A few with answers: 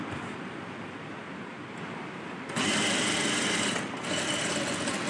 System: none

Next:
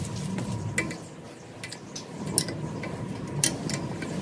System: none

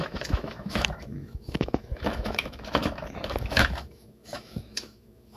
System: autoencoder, DAC-VAE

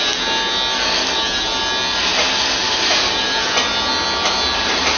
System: none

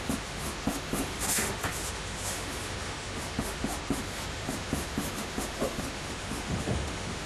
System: autoencoder, DAC-VAE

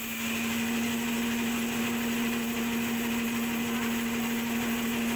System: none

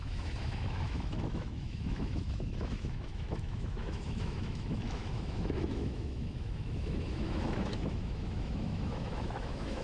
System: autoencoder, DAC-VAE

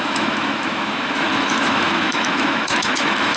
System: autoencoder, DAC-VAE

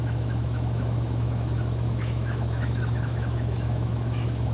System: autoencoder, DAC-VAE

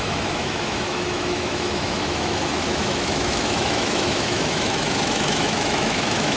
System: autoencoder, DAC-VAE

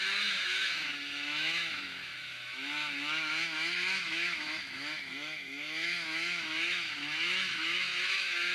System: autoencoder, DAC-VAE